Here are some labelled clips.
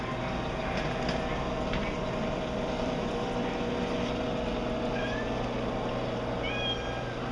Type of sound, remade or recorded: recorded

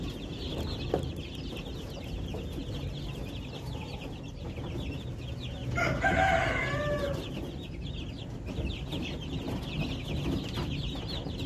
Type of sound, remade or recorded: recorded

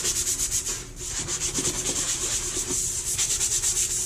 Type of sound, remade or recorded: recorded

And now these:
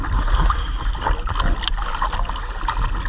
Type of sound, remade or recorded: recorded